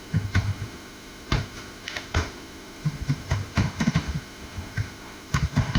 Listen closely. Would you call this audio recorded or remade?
remade